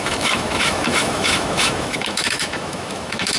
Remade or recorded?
remade